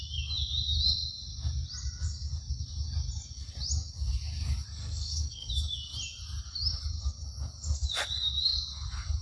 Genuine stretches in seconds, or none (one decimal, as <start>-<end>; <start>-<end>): 0.0-4.8; 5.5-9.2